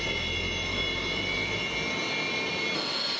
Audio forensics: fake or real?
real